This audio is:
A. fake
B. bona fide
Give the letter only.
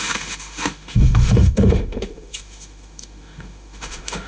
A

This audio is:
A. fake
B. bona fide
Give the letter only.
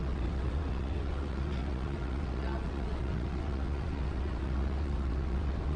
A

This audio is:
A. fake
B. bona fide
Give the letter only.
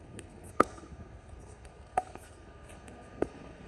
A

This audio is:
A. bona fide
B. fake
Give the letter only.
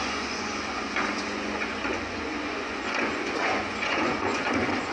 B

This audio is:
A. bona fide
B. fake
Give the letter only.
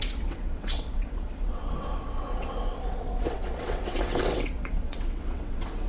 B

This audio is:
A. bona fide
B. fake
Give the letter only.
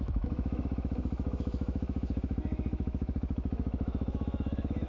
B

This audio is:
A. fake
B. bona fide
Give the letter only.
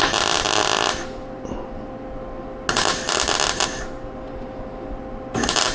B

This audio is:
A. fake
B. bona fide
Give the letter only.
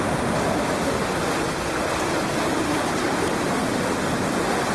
B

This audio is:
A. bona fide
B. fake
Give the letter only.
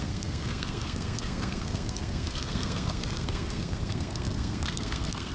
B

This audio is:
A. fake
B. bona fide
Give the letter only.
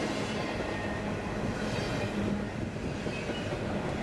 B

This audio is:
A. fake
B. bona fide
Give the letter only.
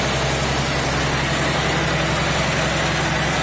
B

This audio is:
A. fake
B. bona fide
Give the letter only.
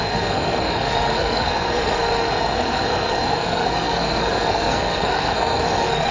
A